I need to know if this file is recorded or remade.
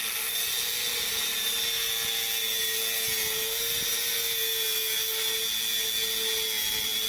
recorded